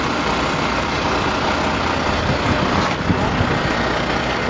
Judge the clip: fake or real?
real